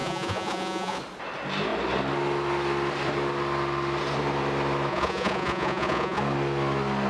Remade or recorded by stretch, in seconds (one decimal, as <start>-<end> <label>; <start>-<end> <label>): 0.0-1.0 remade; 1.0-4.9 recorded; 4.9-6.2 remade; 6.2-7.1 recorded